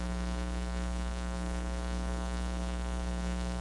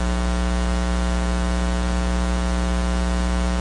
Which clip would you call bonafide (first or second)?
second